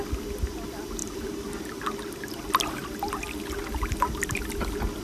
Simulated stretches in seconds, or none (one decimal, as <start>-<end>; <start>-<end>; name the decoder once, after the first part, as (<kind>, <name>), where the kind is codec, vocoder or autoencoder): 1.0-1.7 (vocoder, BigVGAN v2)